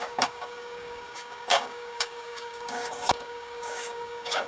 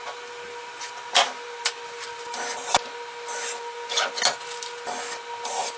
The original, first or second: second